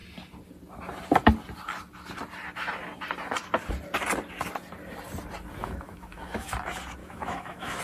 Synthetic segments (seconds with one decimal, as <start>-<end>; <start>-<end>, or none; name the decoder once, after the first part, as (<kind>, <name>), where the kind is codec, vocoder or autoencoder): 5.6-6.5 (autoencoder, DAC-VAE); 7.0-7.8